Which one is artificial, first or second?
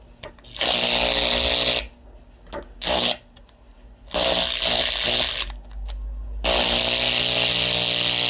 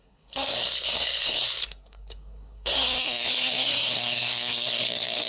second